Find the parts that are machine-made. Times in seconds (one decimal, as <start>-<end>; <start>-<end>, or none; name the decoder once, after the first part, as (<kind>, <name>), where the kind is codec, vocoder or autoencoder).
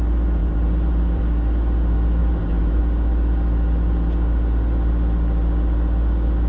0.4-1.2 (vocoder, BigVGAN v2); 2.2-2.8